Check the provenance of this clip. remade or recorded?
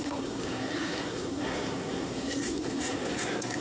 remade